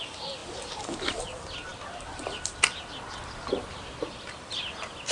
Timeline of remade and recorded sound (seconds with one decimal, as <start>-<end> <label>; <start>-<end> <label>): 0.0-5.1 recorded